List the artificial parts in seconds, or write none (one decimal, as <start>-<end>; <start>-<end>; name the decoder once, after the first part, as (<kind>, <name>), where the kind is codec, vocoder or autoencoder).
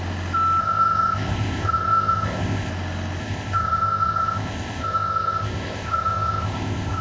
0.6-2.7 (codec, ZipCodec); 3.2-7.0